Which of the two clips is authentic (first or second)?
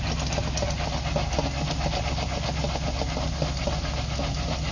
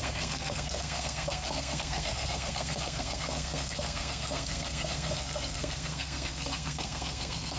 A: first